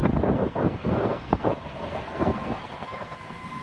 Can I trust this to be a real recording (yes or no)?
no